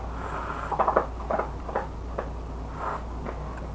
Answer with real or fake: real